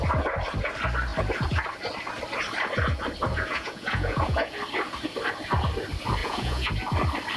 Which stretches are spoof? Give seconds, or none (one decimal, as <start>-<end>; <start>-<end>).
3.3-4.5; 6.2-6.7